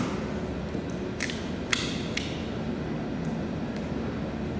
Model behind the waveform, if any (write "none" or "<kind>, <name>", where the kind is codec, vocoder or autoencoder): none